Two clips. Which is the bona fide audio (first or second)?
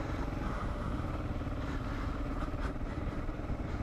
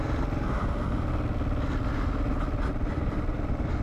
second